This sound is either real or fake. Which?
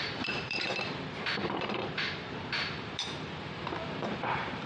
fake